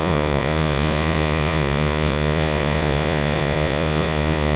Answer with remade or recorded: remade